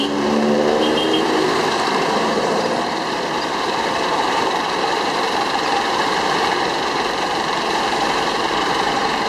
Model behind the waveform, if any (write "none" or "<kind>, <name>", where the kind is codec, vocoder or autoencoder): vocoder, BigVGAN v2